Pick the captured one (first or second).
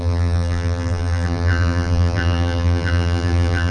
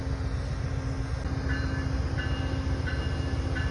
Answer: second